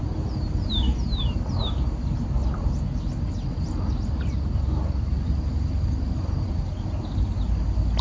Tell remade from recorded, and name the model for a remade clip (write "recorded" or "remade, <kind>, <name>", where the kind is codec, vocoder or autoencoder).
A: recorded